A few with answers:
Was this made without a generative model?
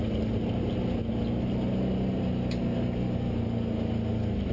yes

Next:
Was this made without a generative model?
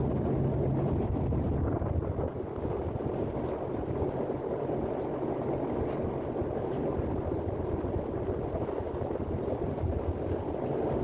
yes